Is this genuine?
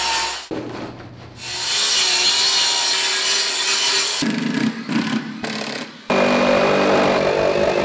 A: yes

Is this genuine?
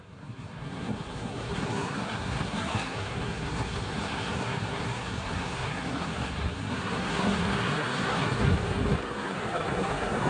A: no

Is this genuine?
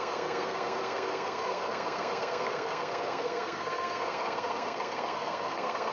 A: no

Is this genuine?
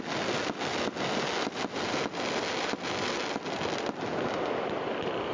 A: yes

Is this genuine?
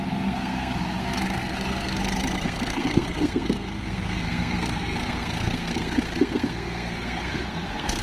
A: no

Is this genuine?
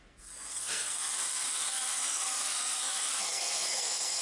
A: no